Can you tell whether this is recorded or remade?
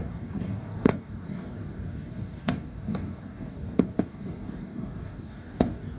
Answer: remade